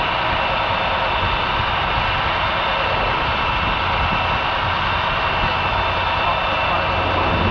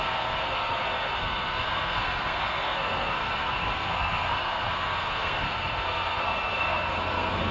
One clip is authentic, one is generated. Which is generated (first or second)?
second